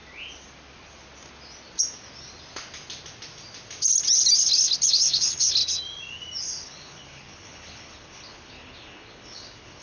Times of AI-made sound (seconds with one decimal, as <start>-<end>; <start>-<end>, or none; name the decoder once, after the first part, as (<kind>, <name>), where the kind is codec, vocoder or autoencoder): 4.9-5.6 (codec, HILCodec); 6.4-9.8